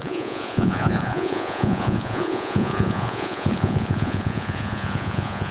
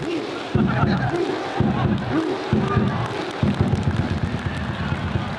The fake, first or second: first